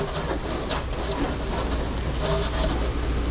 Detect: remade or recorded recorded